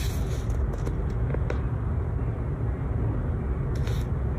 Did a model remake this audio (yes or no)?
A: no